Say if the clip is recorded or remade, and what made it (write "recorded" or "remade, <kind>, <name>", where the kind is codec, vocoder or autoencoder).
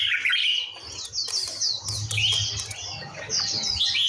recorded